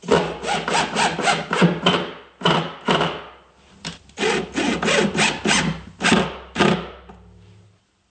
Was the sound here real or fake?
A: fake